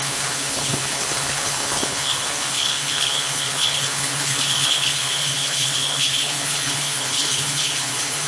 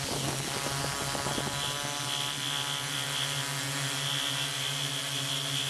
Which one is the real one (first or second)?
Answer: second